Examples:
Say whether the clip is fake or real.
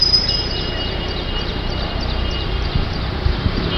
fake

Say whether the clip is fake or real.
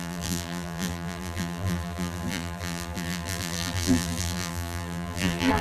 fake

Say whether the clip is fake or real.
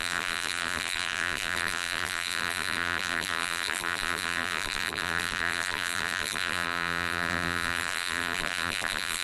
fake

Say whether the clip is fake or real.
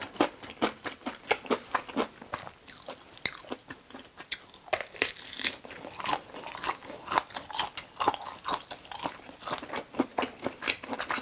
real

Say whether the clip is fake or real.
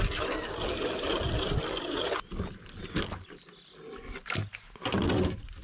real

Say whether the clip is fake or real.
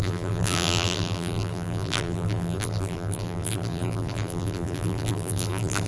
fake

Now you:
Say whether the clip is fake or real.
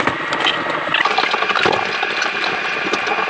fake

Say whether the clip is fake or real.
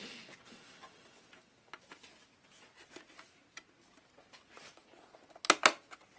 real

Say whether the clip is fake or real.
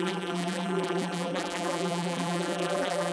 fake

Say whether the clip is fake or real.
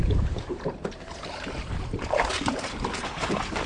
fake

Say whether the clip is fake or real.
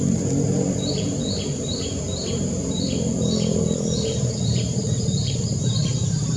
fake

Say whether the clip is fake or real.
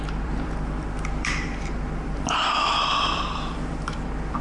fake